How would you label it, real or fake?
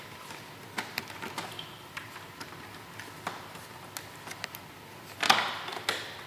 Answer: real